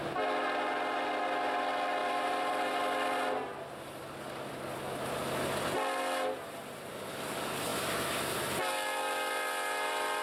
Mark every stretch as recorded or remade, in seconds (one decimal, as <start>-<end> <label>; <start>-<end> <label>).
0.0-2.0 recorded; 2.0-2.7 remade; 2.7-10.2 recorded